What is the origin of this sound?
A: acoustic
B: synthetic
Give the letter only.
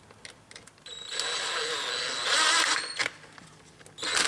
A